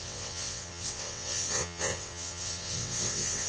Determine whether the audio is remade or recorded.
remade